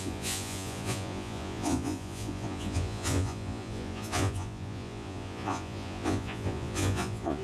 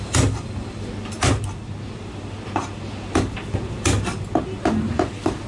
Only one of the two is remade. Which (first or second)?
first